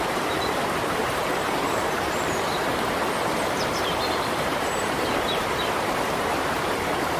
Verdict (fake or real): fake